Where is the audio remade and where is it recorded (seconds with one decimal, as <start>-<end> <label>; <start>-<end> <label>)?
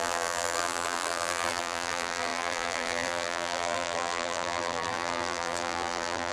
0.0-6.3 remade